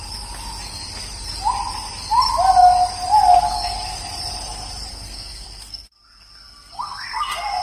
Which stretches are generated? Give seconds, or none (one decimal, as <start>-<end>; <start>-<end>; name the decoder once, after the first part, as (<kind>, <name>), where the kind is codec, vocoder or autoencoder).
4.9-7.6 (codec, SNAC)